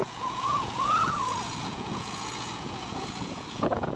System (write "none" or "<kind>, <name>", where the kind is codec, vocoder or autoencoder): vocoder, Vocos